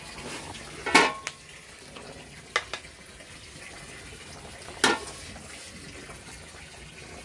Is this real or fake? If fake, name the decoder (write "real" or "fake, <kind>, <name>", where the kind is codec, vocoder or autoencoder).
real